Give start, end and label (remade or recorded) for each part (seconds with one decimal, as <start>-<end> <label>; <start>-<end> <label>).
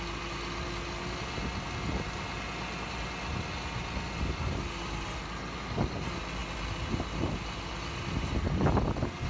0.0-9.3 recorded